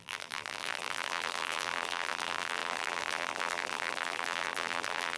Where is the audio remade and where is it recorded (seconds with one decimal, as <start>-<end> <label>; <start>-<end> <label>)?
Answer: 0.0-5.2 remade